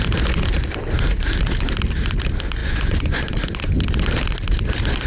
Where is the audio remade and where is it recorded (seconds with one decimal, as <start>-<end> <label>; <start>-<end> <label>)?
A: 0.0-2.6 recorded; 2.6-3.4 remade; 3.4-5.1 recorded